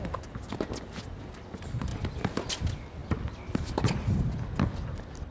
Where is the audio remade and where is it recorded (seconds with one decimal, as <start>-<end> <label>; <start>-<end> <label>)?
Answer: 0.0-5.3 recorded